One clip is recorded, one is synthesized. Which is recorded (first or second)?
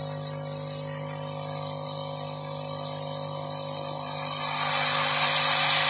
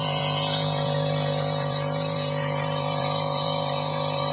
first